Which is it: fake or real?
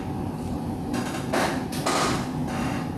real